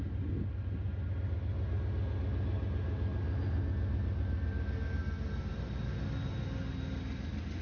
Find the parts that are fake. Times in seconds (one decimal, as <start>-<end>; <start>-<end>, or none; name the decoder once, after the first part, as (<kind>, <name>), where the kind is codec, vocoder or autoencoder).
none